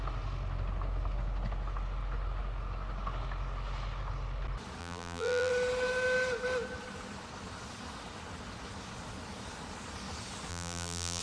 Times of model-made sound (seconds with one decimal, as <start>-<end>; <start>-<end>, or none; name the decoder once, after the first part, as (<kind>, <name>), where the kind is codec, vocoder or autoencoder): 4.8-5.5 (vocoder, BigVGAN v2); 10.5-11.2